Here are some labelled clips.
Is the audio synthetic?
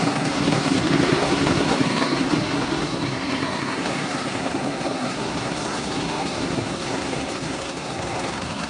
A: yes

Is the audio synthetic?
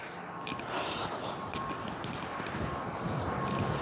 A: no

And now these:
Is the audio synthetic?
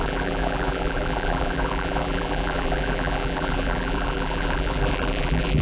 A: yes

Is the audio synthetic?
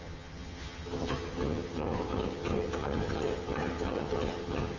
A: yes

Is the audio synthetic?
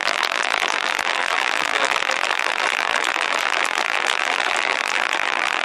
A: yes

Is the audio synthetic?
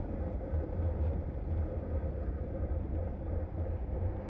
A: yes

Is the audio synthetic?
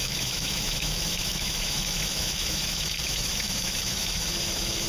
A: yes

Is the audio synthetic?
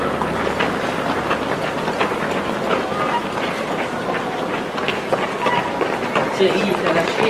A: no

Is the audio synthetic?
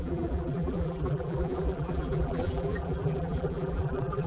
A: yes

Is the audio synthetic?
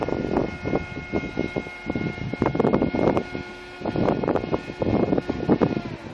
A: no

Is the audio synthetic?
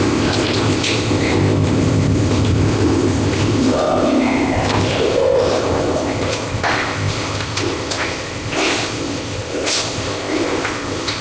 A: yes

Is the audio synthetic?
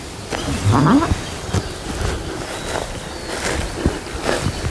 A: no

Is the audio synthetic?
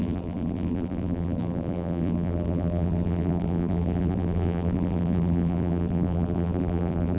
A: yes